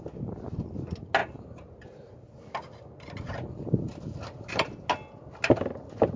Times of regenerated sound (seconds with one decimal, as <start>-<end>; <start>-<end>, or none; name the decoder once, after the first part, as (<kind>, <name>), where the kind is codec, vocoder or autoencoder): none